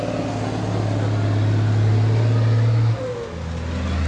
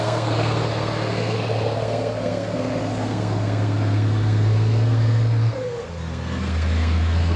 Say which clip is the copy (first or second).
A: second